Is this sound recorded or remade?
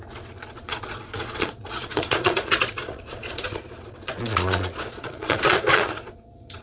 remade